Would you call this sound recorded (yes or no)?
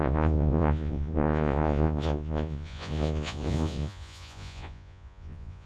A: no